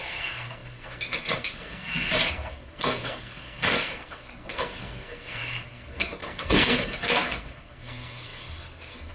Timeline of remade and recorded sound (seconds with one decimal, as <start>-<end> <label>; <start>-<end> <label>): 0.0-9.1 remade